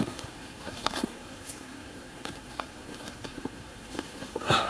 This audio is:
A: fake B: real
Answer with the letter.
A